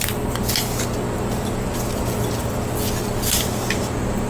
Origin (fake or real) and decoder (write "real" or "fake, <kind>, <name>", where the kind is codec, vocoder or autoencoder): real